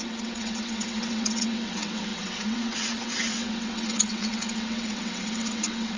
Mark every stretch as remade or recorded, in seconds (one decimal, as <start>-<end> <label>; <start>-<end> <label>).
0.0-6.0 remade

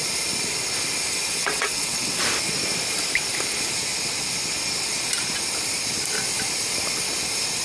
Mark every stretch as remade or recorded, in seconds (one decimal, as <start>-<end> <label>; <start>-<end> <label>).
0.0-1.4 recorded; 1.4-2.2 remade; 2.2-7.6 recorded

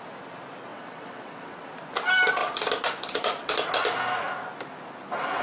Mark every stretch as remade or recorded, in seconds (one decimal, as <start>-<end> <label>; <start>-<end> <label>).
0.0-0.7 recorded; 0.7-1.7 remade; 1.7-5.4 recorded